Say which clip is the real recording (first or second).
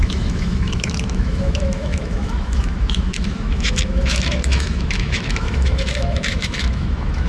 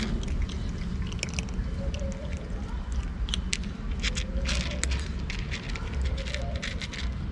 second